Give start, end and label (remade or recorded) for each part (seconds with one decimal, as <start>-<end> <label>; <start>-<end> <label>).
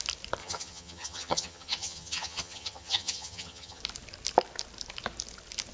0.0-0.4 recorded; 0.4-3.8 remade; 3.8-5.7 recorded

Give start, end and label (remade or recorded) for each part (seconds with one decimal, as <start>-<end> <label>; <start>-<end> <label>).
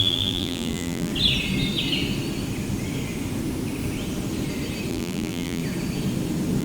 0.0-1.1 remade; 1.1-4.9 recorded; 4.9-5.6 remade; 5.6-6.6 recorded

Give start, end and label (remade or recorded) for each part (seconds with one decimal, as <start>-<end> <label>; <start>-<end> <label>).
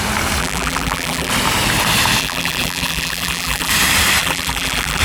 0.0-0.4 recorded; 0.4-1.3 remade; 1.3-2.2 recorded; 2.2-3.7 remade; 3.7-4.2 recorded; 4.2-5.0 remade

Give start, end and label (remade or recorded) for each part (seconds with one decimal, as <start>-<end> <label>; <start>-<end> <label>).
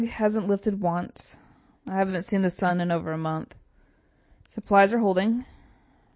0.0-2.1 recorded; 2.1-2.7 remade; 2.7-6.2 recorded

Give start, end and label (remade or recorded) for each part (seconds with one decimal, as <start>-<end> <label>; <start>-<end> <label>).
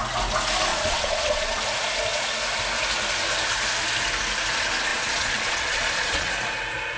0.0-0.7 recorded; 0.7-1.6 remade; 1.6-4.9 recorded; 4.9-6.3 remade; 6.3-7.0 recorded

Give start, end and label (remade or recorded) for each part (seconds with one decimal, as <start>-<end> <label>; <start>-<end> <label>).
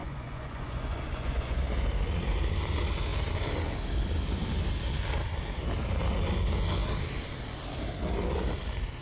0.0-1.6 remade; 1.6-9.0 recorded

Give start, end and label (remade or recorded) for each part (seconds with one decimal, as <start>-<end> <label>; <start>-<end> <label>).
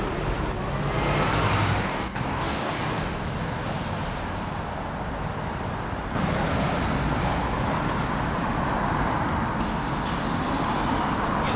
0.0-1.9 recorded; 1.9-2.7 remade; 2.7-11.6 recorded